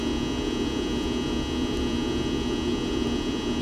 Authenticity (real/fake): real